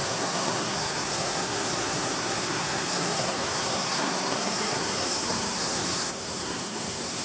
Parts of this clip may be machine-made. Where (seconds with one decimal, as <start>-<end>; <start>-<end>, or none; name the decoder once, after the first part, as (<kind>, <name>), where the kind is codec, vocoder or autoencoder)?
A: 0.0-7.2 (codec, SNAC)